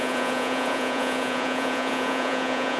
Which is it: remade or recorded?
remade